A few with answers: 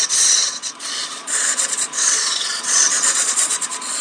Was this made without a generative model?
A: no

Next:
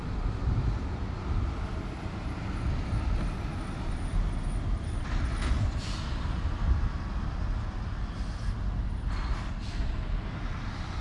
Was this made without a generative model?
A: yes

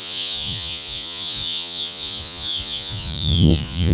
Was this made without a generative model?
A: no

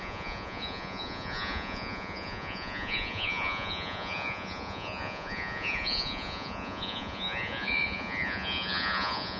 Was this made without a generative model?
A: no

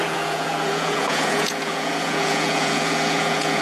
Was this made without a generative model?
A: no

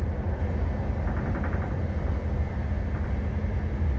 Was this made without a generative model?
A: yes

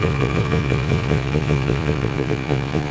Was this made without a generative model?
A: no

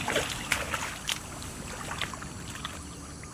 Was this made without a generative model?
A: yes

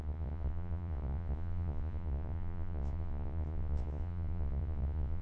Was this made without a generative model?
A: no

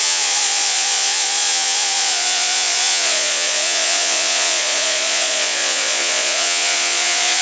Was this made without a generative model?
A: no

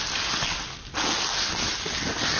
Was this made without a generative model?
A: yes